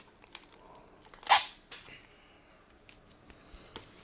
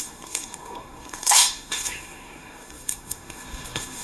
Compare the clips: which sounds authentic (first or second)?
first